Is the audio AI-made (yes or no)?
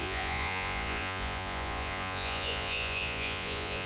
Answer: yes